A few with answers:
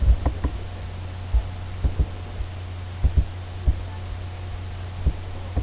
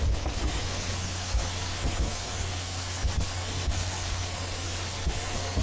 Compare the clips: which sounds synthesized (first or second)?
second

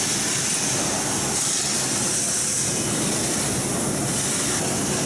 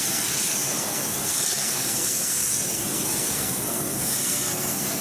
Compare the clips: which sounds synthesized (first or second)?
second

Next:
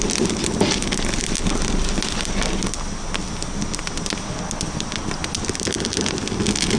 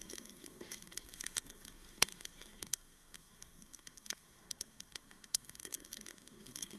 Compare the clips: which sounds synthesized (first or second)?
second